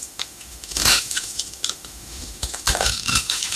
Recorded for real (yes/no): no